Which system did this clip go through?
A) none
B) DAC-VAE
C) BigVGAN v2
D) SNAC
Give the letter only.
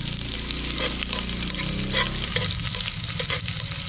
A